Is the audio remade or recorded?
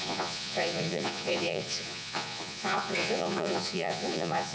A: remade